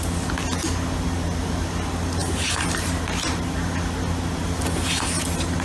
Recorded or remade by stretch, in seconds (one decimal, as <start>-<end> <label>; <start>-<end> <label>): 0.0-5.6 recorded